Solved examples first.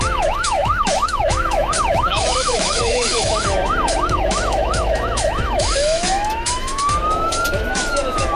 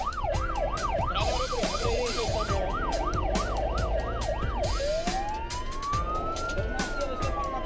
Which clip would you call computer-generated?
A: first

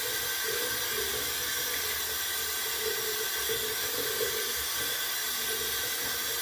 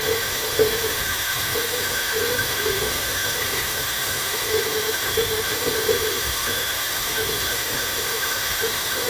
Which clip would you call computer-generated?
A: second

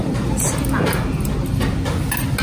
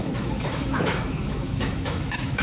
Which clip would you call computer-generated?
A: second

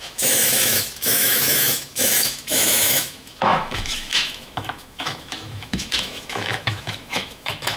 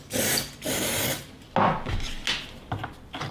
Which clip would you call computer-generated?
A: first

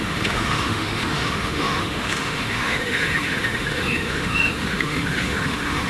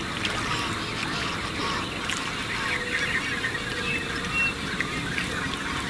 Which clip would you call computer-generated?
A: first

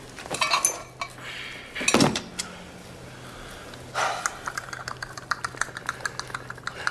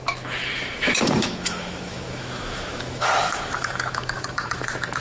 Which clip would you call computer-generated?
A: second